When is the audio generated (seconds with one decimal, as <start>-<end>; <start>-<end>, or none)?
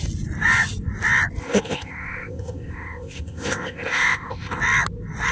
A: 1.4-4.6